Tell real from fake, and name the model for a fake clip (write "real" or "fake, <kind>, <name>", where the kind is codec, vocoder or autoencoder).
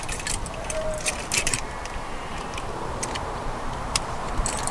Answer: fake, vocoder, BigVGAN v2